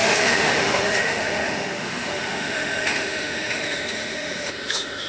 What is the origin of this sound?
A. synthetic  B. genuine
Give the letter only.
A